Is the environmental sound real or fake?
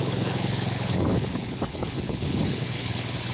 fake